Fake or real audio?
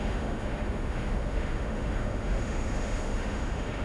fake